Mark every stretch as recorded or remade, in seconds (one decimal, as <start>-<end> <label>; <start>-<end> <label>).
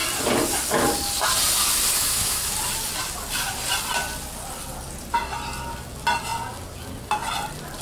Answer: 0.0-2.0 recorded; 2.0-2.5 remade; 2.5-7.8 recorded